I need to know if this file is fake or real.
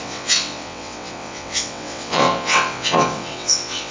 fake